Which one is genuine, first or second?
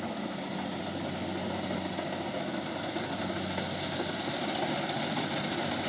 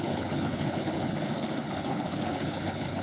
first